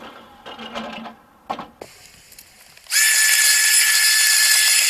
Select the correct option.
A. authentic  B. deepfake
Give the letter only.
A